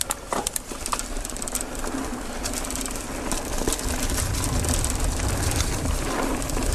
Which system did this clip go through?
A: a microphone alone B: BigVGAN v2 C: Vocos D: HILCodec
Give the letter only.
A